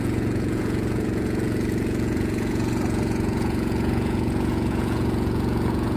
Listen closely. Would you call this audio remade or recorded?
remade